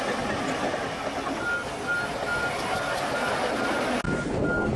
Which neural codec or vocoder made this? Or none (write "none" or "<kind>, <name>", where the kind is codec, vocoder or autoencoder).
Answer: none